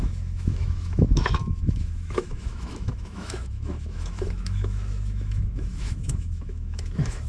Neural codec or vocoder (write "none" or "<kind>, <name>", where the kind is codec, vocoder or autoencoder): autoencoder, DAC-VAE